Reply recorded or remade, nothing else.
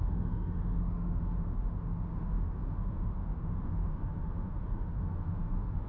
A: remade